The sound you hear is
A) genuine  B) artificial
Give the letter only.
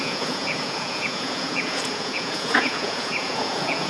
B